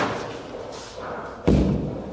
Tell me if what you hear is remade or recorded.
recorded